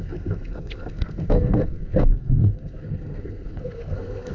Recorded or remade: remade